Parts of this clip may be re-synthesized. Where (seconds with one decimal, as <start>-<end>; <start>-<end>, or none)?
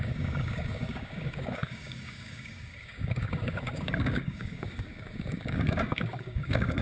0.0-6.8